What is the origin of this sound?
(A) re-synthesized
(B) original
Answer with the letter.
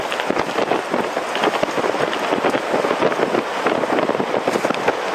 B